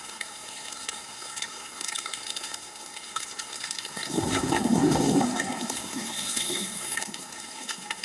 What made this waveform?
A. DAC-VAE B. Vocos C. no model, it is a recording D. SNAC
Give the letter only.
D